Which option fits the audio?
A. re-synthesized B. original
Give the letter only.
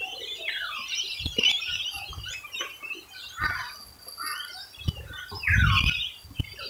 B